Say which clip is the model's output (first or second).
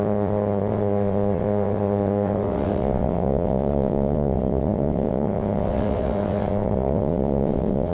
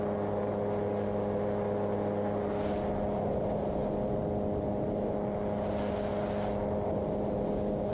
first